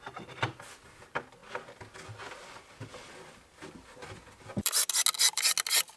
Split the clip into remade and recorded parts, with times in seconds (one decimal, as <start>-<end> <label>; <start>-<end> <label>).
0.0-6.0 recorded